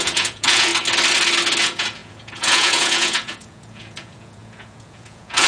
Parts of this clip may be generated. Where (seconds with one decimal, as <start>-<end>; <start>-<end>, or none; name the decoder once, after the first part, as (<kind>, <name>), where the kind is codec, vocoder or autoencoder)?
0.0-0.7 (vocoder, Vocos); 1.6-5.5